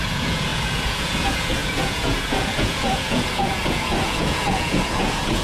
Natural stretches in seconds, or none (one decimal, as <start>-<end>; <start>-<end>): none